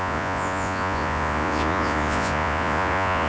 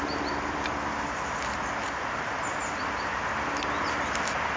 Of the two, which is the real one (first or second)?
second